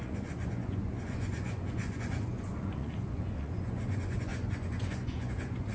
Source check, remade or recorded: remade